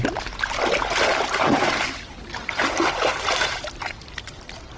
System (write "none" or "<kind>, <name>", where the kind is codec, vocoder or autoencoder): none